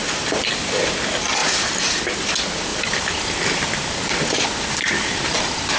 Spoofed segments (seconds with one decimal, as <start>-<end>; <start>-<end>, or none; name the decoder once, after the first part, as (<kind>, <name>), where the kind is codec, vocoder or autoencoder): 0.0-0.8 (vocoder, BigVGAN v2); 1.4-2.3; 2.7-5.8